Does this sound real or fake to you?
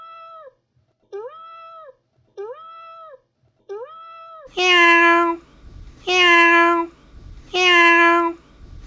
real